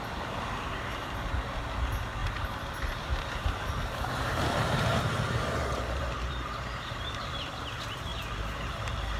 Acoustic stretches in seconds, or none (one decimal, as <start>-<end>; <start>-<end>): 0.0-2.2; 7.4-9.2